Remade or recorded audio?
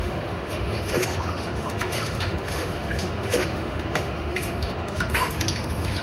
remade